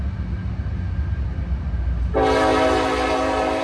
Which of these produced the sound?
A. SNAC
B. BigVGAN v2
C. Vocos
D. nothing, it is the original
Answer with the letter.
D